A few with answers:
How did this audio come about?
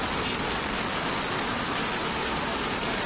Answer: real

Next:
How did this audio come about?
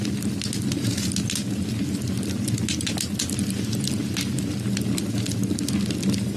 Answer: real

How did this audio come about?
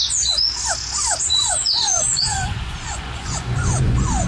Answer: fake